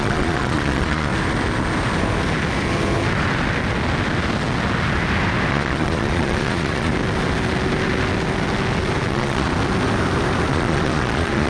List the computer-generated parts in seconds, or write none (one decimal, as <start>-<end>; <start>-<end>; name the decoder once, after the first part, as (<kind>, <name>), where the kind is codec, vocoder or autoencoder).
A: 0.0-1.1 (vocoder, Vocos); 5.5-6.9; 9.1-9.5; 10.5-11.5